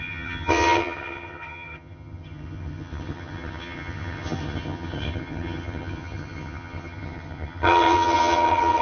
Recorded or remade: remade